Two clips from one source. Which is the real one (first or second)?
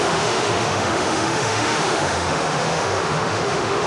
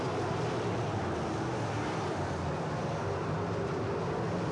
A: second